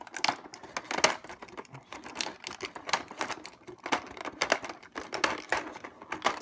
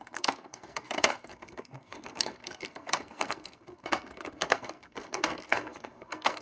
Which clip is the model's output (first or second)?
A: second